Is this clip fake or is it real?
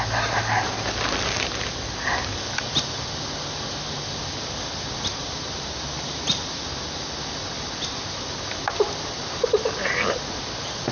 real